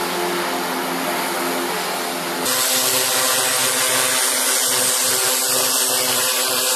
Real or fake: real